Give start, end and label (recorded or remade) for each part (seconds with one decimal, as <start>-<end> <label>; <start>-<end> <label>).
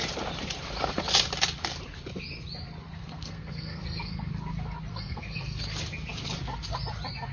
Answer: 0.0-3.0 recorded; 3.0-4.3 remade; 4.3-4.9 recorded; 4.9-5.6 remade; 5.6-7.3 recorded